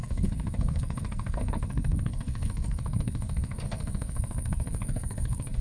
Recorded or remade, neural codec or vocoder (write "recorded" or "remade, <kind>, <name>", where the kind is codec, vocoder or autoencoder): remade, codec, SNAC